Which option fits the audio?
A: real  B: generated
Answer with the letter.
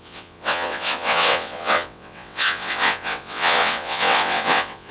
B